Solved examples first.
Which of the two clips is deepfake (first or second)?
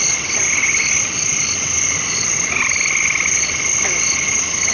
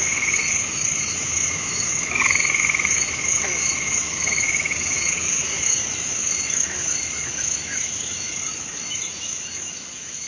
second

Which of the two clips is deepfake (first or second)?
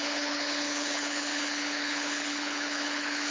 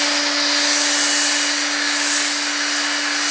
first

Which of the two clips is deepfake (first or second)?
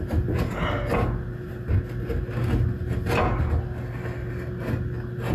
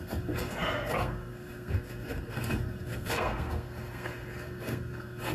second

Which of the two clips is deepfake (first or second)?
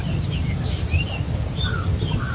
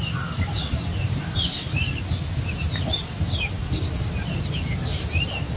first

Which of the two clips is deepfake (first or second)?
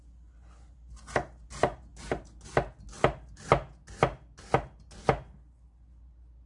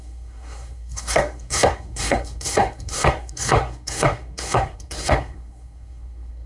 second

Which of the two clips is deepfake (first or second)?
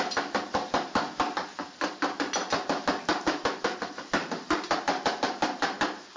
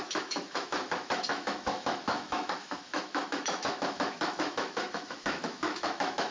second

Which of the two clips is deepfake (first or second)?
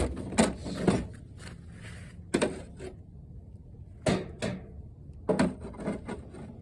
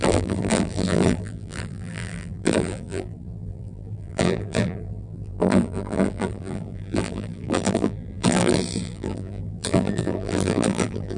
second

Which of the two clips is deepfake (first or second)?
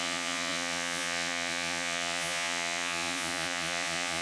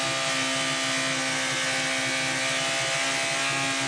first